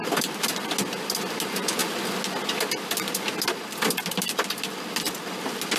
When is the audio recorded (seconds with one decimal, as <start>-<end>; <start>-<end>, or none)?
0.0-5.8